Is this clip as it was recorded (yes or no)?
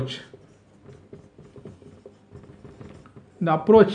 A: yes